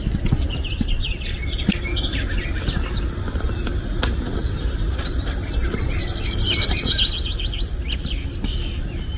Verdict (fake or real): real